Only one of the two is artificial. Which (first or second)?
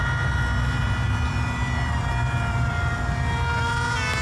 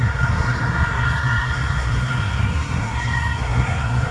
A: second